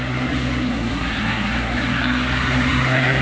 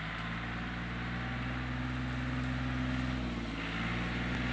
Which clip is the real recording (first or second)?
second